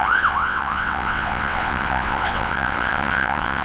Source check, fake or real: fake